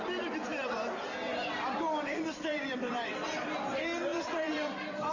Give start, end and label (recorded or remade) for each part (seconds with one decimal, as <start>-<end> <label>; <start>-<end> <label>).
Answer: 0.0-2.5 recorded; 2.5-3.1 remade; 3.1-4.1 recorded; 4.1-5.1 remade